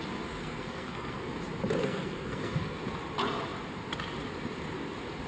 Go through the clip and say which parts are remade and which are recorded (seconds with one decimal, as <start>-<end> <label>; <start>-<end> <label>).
0.0-0.4 recorded; 0.4-1.3 remade; 1.3-1.8 recorded; 1.8-2.8 remade; 2.8-5.3 recorded